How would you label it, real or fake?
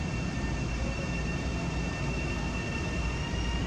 real